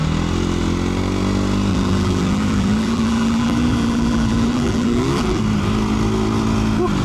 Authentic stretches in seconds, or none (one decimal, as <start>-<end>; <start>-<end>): 0.0-1.7; 5.4-7.0

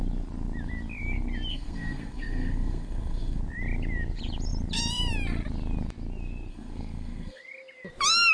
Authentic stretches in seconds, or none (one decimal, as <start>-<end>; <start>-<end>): 0.0-1.5; 3.4-6.5; 7.4-8.3

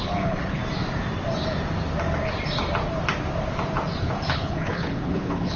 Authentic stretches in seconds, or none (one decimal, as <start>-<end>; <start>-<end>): 0.6-4.0

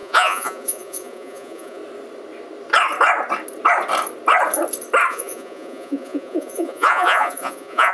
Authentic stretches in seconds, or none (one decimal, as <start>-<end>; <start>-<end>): 1.8-5.1

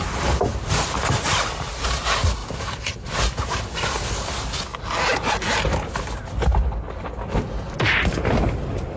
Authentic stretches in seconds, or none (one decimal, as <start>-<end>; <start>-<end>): 0.0-9.0

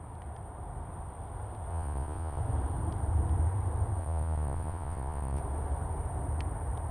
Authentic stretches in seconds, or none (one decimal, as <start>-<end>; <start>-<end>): 0.0-1.7; 2.4-4.0; 5.4-6.9

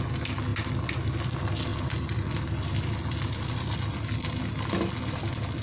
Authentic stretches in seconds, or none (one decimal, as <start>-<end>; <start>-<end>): 0.0-5.6